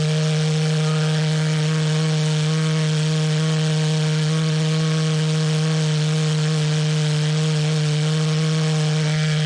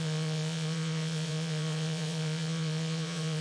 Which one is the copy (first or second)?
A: second